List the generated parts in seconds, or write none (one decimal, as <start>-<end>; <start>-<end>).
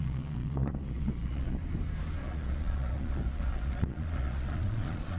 0.0-1.6; 2.2-5.2